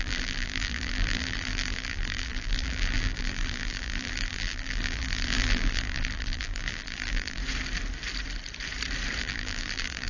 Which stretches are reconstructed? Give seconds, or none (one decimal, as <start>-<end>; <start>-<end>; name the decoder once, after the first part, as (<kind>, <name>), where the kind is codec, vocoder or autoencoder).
0.0-7.4 (vocoder, BigVGAN v2); 9.2-10.1